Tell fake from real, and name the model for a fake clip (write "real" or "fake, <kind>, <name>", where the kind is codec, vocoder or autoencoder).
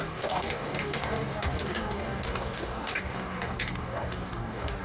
fake, codec, DAC